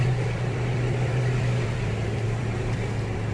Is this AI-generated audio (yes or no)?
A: yes